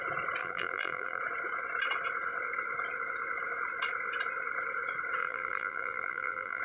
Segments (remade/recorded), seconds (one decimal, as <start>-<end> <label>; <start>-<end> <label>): 0.0-0.4 recorded; 0.4-1.2 remade; 1.2-5.2 recorded; 5.2-6.6 remade